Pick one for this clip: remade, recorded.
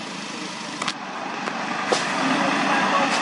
recorded